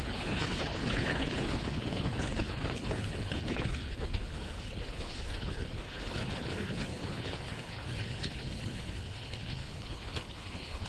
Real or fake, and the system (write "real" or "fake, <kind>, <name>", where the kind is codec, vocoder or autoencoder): fake, codec, HILCodec